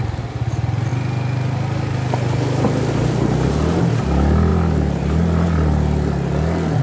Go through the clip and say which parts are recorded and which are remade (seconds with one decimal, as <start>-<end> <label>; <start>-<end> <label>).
0.0-6.8 recorded